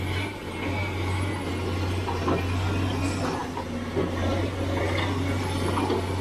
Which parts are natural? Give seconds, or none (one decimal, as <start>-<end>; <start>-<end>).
0.0-6.2